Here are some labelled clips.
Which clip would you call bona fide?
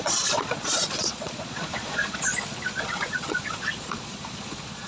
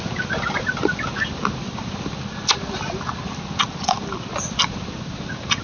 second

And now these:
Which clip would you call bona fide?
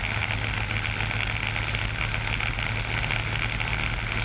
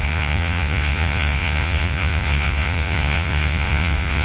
first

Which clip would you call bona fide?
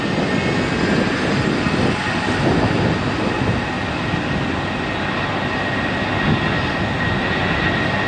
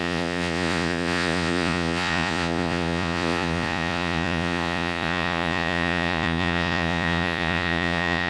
first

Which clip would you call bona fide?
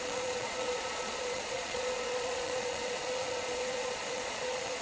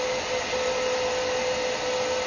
second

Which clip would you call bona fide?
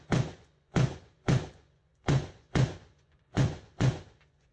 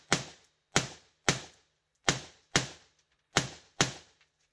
second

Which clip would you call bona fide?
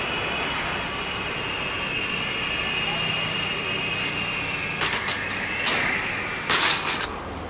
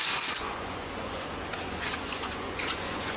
first